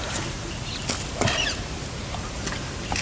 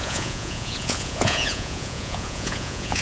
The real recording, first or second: first